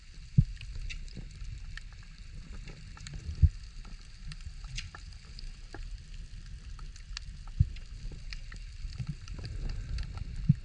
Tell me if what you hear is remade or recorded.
recorded